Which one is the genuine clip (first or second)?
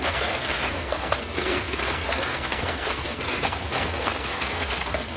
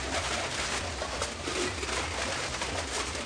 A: second